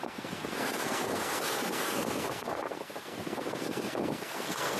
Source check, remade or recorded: remade